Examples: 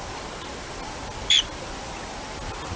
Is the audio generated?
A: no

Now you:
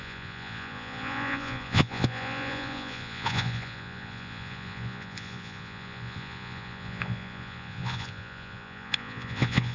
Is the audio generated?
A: yes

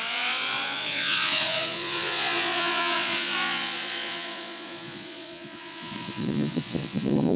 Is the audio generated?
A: yes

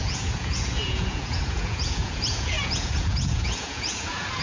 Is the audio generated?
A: yes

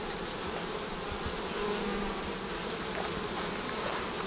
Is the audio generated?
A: no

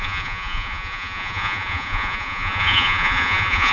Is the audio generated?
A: yes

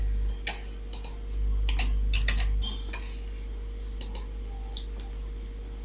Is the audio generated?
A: no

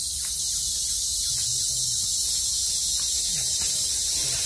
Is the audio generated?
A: no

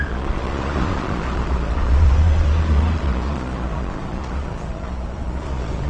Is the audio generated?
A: yes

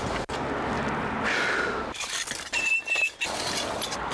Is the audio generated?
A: no